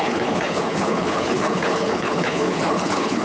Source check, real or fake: fake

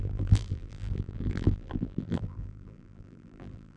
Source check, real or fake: fake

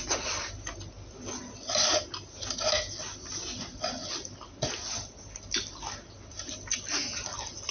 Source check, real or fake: real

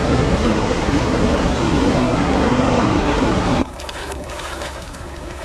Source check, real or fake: fake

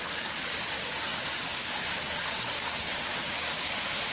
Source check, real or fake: fake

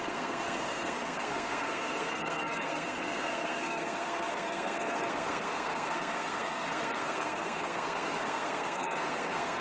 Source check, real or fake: fake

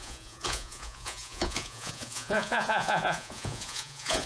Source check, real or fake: fake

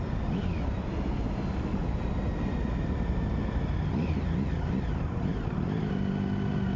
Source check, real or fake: real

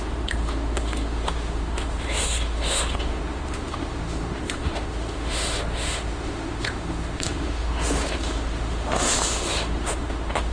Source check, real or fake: fake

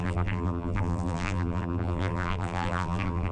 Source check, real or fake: fake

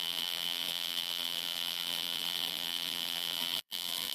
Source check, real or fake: fake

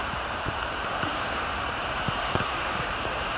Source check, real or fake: fake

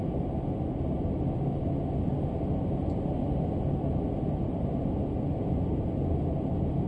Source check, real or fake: real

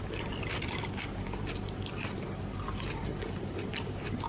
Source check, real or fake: real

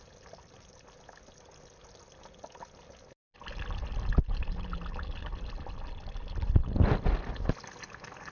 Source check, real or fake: real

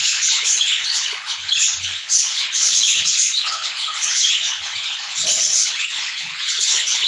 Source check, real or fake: fake